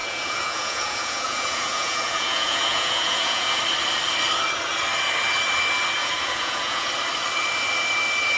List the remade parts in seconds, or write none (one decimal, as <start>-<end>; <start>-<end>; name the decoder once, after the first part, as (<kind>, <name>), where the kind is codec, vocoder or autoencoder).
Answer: 0.0-3.6 (vocoder, Vocos); 6.0-6.9